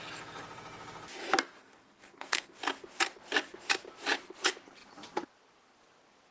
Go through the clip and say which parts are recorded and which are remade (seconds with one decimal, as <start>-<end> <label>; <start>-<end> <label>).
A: 0.0-1.6 recorded; 1.6-2.6 remade; 2.6-6.3 recorded